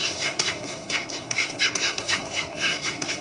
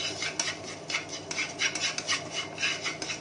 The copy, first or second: first